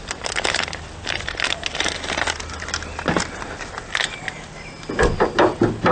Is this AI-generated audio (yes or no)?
no